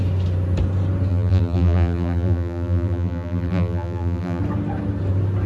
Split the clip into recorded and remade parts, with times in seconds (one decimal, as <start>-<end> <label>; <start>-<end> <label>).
0.0-1.1 recorded; 1.1-4.4 remade; 4.4-5.5 recorded